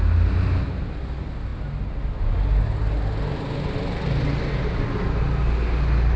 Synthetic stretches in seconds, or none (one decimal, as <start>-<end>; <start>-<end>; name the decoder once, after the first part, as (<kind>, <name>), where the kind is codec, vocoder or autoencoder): none